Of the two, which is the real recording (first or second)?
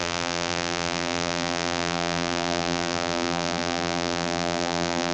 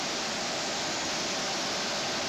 second